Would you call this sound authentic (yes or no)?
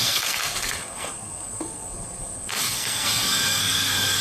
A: no